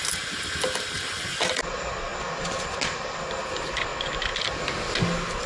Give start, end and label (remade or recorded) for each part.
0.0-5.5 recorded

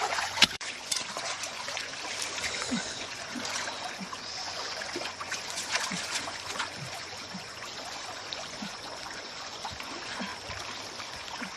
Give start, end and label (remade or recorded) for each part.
0.0-1.9 remade; 1.9-2.4 recorded; 2.4-10.3 remade; 10.3-11.1 recorded; 11.1-11.6 remade

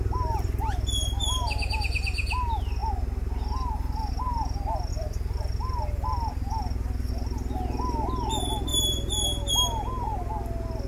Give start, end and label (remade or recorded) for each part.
0.0-4.9 recorded; 4.9-7.1 remade; 7.1-10.9 recorded